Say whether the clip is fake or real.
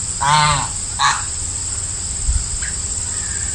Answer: real